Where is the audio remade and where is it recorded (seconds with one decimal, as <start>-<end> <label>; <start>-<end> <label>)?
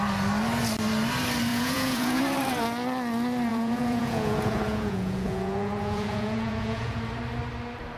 0.0-1.5 recorded; 1.5-2.2 remade; 2.2-3.5 recorded; 3.5-7.0 remade; 7.0-8.0 recorded